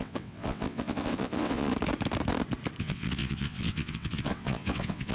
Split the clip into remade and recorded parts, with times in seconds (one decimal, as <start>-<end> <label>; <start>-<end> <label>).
0.0-1.7 remade; 1.7-2.8 recorded; 2.8-5.1 remade